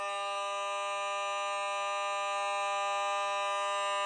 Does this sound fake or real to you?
real